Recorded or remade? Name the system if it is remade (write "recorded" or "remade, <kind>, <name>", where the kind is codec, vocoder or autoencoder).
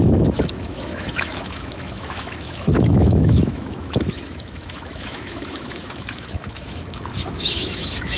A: remade, autoencoder, DAC-VAE